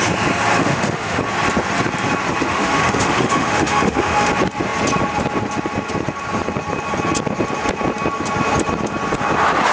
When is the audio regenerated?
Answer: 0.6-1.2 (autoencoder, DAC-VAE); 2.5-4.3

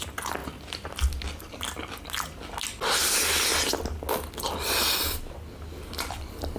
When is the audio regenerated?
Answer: none

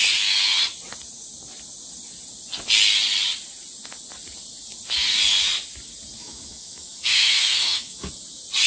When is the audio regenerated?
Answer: 6.2-8.1 (autoencoder, DAC-VAE)

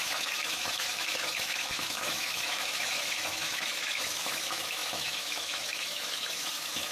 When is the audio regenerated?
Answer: 0.0-6.9 (autoencoder, DAC-VAE)

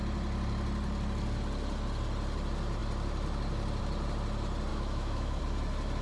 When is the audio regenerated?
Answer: 4.7-5.4 (autoencoder, DAC-VAE)

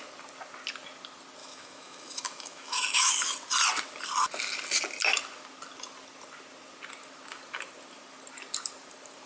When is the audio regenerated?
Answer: 1.4-3.1 (autoencoder, DAC-VAE)